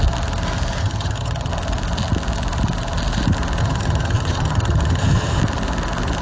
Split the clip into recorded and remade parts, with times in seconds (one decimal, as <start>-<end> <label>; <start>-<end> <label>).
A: 0.0-0.8 recorded; 0.8-1.5 remade; 1.5-3.6 recorded; 3.6-5.4 remade; 5.4-6.2 recorded